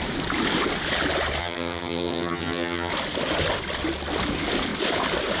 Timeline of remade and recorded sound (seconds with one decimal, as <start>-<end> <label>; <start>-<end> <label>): 0.0-1.4 recorded; 1.4-2.9 remade; 2.9-5.4 recorded